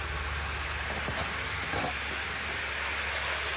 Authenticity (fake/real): real